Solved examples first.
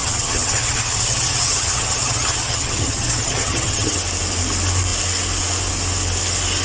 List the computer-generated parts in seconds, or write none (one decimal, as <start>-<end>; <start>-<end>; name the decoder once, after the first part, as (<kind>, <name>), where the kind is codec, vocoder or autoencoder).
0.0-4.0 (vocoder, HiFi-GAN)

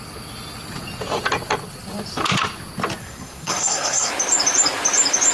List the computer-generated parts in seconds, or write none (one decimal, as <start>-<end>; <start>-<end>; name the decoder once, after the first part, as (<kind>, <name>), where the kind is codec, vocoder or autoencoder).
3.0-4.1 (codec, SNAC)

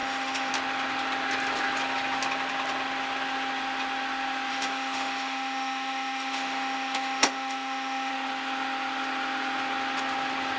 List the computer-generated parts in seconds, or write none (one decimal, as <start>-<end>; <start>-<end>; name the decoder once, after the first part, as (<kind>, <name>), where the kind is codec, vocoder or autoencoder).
0.0-0.5 (autoencoder, DAC-VAE); 4.5-8.1

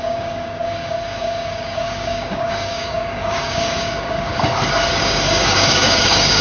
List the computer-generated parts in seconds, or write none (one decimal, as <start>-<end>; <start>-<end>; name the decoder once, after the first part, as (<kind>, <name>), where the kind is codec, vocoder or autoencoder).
0.0-4.3 (codec, DAC); 5.0-6.4